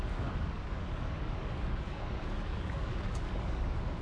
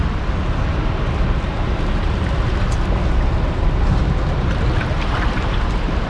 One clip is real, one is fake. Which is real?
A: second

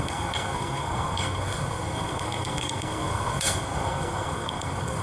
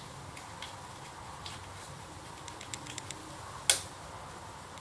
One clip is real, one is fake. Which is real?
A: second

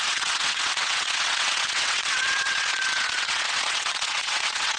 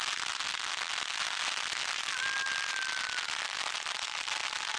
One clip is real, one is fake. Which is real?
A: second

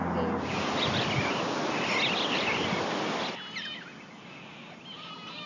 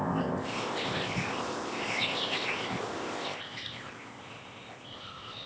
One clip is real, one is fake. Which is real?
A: first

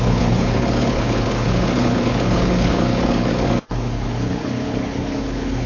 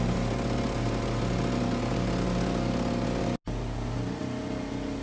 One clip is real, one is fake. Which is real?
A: second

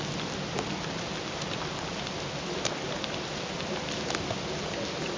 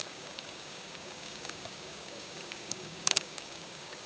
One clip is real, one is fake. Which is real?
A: first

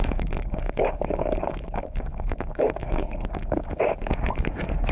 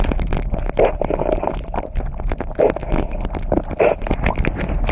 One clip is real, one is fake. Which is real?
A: second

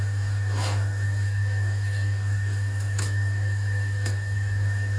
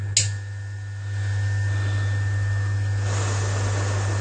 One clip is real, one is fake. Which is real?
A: second